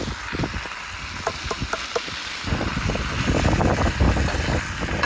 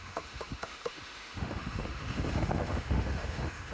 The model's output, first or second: second